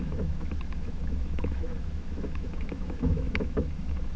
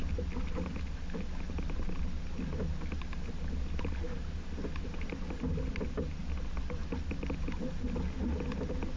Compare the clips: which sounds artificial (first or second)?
first